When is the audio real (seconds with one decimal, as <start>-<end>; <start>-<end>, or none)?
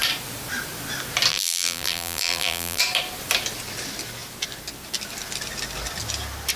0.0-1.3; 2.8-6.6